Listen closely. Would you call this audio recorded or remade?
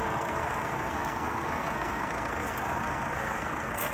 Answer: remade